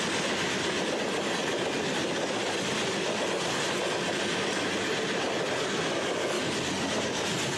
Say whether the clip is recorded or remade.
recorded